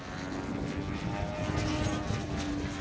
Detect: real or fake real